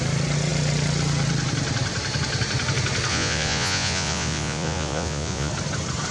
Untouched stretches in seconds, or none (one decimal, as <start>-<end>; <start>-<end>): 0.0-3.1; 5.5-6.1